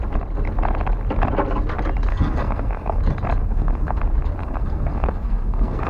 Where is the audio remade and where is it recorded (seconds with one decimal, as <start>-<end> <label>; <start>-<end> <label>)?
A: 0.0-2.1 recorded; 2.1-3.0 remade; 3.0-3.4 recorded; 3.4-4.0 remade; 4.0-4.4 recorded; 4.4-5.9 remade